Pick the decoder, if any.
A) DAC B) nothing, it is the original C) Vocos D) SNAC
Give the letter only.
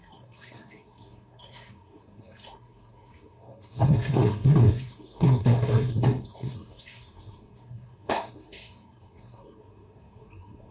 D